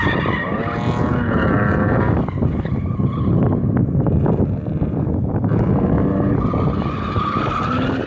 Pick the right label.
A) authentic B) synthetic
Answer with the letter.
A